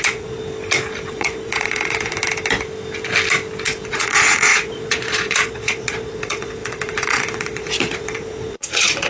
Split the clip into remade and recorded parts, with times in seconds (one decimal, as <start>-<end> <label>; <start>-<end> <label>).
0.0-0.4 remade; 0.4-1.1 recorded; 1.1-2.1 remade; 2.1-3.9 recorded; 3.9-9.1 remade